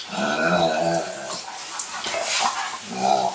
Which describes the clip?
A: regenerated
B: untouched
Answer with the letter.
B